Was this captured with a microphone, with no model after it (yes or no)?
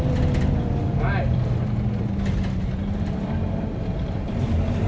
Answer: yes